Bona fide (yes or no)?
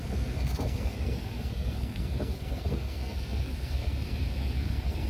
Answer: no